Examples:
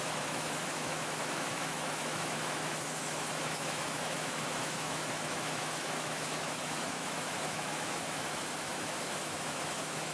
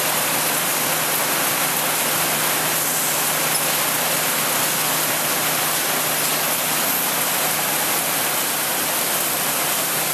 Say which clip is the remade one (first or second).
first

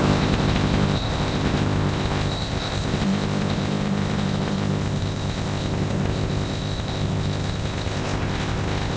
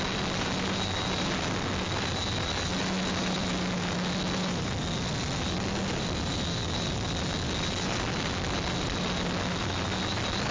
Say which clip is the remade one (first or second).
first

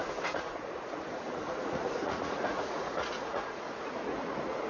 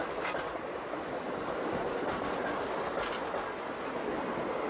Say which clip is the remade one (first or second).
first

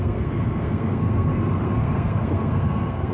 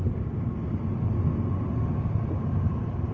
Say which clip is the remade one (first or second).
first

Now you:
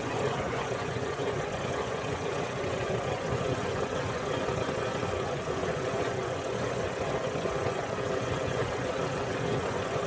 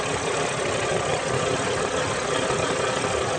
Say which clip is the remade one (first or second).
first